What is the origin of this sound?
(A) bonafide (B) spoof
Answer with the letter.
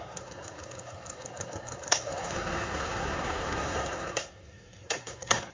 B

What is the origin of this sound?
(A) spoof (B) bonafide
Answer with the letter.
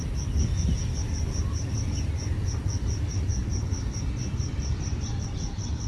B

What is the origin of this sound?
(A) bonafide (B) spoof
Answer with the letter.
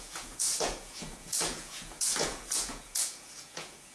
B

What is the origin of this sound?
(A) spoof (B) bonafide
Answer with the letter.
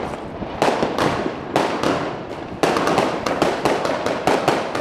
B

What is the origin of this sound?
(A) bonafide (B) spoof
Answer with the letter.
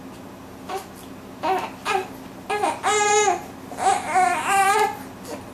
A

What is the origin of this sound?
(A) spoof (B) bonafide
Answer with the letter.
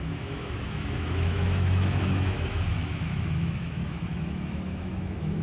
A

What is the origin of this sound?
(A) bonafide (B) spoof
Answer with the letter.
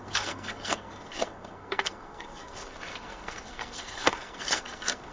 B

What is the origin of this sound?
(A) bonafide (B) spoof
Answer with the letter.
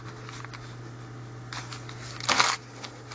A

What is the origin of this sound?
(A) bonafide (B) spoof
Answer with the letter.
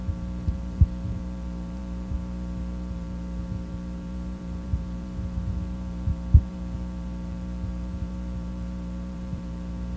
B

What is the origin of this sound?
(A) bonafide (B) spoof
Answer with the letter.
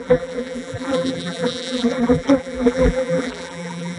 B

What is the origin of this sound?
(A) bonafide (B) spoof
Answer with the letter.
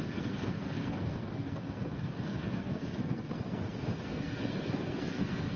B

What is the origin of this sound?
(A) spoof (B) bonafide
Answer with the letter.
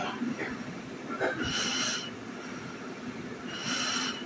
B